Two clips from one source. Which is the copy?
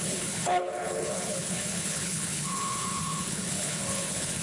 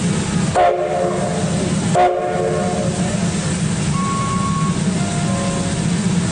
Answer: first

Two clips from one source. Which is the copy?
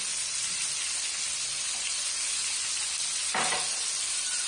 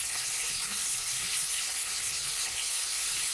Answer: second